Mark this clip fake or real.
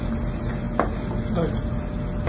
real